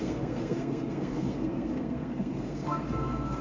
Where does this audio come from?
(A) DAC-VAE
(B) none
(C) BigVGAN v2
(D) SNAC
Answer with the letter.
D